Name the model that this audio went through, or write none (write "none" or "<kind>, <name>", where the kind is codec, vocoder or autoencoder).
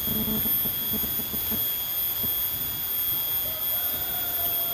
none